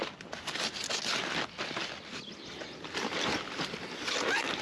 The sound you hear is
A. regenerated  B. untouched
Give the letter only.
B